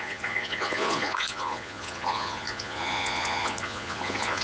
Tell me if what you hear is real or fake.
fake